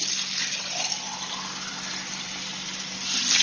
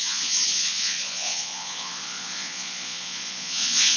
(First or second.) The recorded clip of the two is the first